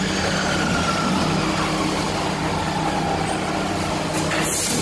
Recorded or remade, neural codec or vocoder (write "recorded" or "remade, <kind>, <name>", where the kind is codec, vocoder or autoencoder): recorded